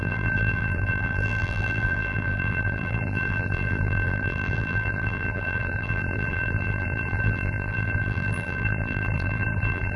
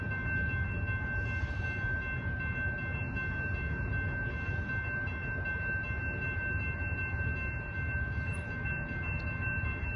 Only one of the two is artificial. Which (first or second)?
first